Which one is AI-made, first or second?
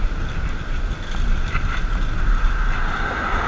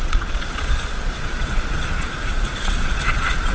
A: second